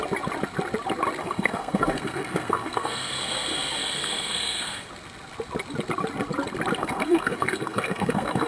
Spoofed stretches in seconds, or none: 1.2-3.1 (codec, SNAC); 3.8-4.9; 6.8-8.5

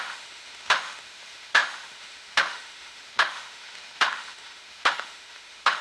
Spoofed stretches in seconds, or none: 0.0-5.8 (autoencoder, DAC-VAE)

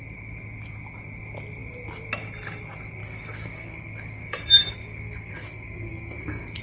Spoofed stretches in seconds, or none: 3.0-6.6 (codec, DAC)